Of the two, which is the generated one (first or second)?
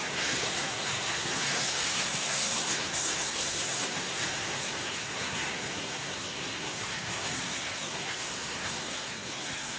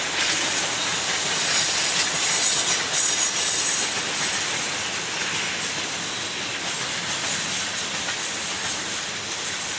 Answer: first